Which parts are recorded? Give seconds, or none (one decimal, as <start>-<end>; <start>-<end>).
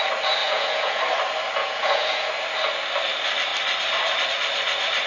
0.0-0.4; 1.0-1.6; 2.3-5.1